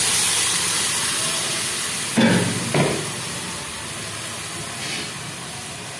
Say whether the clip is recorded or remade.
recorded